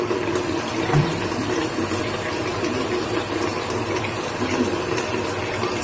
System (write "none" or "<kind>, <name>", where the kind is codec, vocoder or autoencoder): none